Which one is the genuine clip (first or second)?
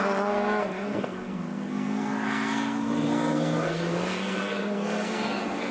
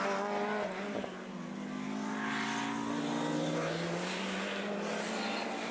second